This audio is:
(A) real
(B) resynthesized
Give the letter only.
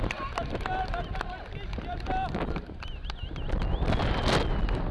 A